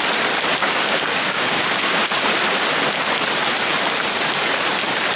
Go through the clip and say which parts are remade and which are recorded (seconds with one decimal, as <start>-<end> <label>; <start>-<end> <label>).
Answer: 0.0-0.6 recorded; 0.6-2.0 remade; 2.0-5.2 recorded